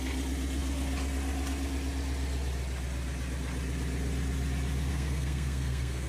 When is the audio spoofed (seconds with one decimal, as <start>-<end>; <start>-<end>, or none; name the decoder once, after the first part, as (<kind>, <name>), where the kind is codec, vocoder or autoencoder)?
4.9-6.1 (codec, SNAC)